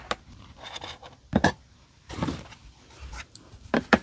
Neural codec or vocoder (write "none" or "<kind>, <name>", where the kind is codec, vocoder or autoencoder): vocoder, BigVGAN v2